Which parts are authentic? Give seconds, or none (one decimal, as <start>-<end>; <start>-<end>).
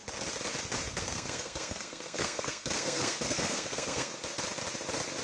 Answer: 0.0-1.0; 4.1-5.2